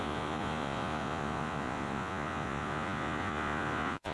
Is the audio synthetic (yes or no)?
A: yes